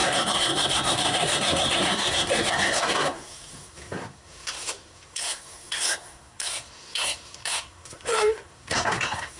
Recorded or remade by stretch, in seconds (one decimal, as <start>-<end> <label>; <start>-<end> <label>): 0.0-9.4 remade